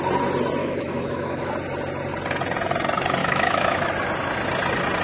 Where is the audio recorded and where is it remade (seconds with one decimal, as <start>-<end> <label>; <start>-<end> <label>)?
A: 0.0-0.6 recorded; 0.6-1.5 remade; 1.5-3.2 recorded; 3.2-3.9 remade; 3.9-5.0 recorded